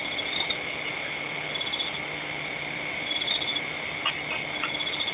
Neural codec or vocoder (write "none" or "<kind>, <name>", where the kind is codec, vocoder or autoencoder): none